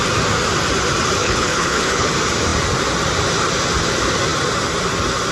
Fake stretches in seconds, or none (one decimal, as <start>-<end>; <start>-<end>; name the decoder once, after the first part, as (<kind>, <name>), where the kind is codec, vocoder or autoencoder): 1.2-2.1 (codec, HILCodec)